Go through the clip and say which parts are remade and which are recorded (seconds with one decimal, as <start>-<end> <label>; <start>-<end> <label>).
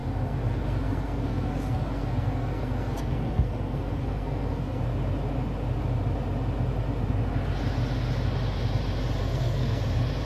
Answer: 0.0-4.8 remade; 4.8-9.2 recorded; 9.2-9.8 remade; 9.8-10.3 recorded